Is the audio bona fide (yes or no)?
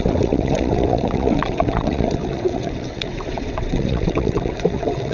no